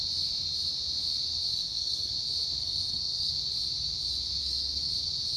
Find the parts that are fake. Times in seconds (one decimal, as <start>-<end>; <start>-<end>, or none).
1.5-2.1; 2.6-3.3; 4.4-4.9